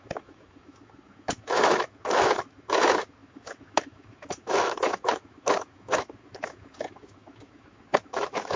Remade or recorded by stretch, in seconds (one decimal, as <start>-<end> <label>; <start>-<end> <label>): 0.0-8.6 remade